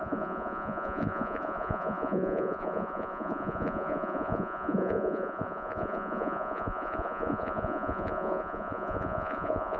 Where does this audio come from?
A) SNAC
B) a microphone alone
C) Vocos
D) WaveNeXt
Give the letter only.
C